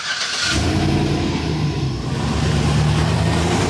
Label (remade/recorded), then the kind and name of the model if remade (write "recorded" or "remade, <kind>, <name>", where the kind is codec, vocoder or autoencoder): remade, vocoder, BigVGAN v2